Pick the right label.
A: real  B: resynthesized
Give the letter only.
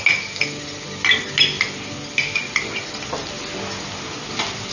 A